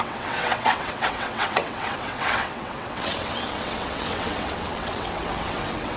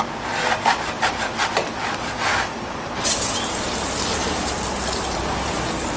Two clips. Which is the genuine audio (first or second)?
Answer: second